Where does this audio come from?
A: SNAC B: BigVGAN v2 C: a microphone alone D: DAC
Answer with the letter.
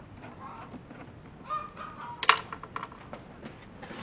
C